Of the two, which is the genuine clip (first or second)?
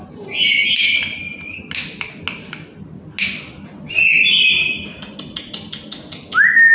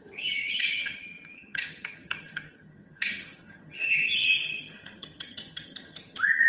first